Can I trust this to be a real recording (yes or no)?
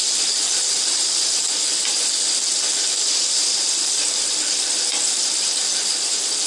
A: yes